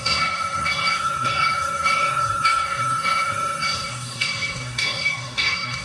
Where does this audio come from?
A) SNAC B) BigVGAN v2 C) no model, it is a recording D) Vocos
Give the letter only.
A